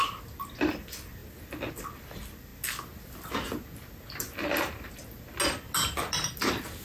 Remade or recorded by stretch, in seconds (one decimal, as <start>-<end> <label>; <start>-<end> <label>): 0.0-6.8 recorded